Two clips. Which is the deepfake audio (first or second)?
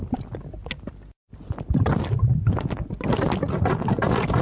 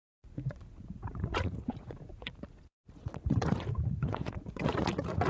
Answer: second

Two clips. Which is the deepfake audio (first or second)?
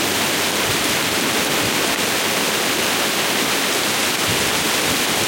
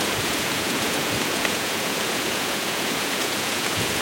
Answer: second